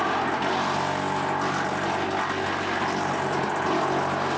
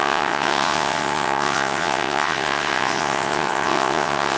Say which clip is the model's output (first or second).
second